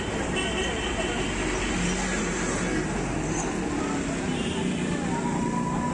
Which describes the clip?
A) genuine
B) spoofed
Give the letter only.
A